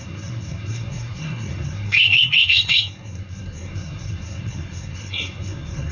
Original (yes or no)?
no